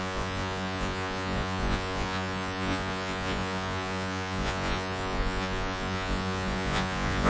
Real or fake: fake